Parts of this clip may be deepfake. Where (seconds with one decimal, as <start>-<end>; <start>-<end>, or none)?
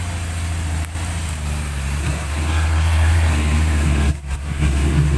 2.0-5.2